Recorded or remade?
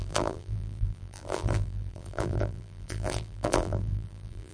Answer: remade